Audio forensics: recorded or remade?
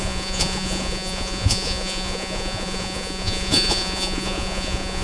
remade